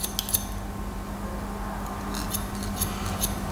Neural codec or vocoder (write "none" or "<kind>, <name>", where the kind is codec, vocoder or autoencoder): none